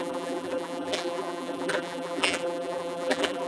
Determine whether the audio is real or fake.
fake